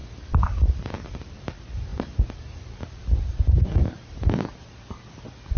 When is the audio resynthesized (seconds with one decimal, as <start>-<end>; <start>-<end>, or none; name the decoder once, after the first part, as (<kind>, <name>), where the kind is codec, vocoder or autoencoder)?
none